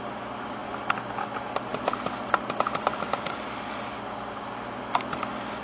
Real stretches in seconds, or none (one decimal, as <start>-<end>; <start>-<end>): 0.0-5.6